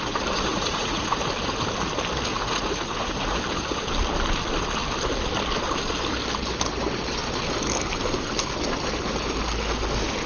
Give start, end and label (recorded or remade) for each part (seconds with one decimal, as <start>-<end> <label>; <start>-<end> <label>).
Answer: 0.0-0.5 recorded; 0.5-1.2 remade; 1.2-2.3 recorded; 2.3-3.4 remade; 3.4-10.3 recorded